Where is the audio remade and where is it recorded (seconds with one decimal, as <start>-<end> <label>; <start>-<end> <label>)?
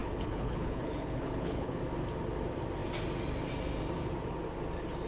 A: 0.0-1.8 remade; 1.8-5.1 recorded